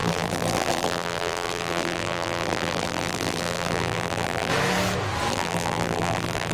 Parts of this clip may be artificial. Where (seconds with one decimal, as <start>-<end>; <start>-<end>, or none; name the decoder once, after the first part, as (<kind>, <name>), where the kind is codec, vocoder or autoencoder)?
0.0-4.5 (vocoder, BigVGAN v2); 5.3-6.5